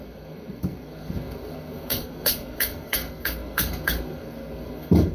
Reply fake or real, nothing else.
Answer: fake